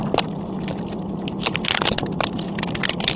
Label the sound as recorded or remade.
recorded